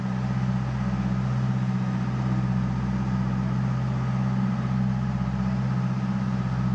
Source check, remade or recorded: recorded